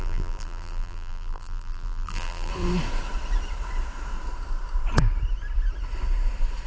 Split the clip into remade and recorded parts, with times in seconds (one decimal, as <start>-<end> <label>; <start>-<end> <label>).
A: 0.0-2.5 remade; 2.5-6.7 recorded